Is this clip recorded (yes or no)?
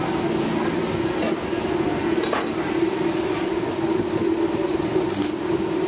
yes